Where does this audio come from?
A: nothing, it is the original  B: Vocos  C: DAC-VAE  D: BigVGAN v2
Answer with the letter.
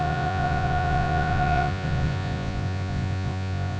B